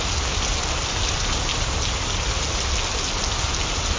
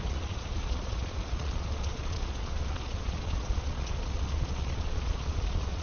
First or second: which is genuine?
first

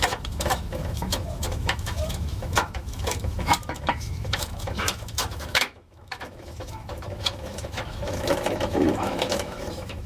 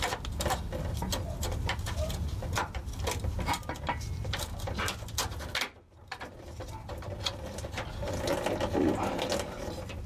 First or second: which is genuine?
second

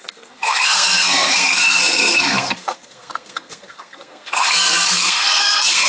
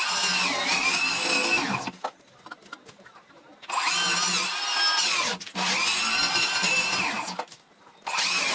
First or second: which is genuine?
second